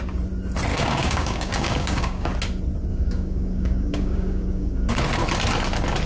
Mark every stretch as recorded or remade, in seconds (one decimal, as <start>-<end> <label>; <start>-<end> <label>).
0.0-0.7 recorded; 0.7-2.3 remade; 2.3-2.9 recorded; 2.9-4.9 remade; 4.9-6.1 recorded